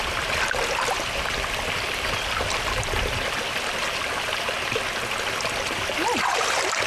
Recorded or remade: recorded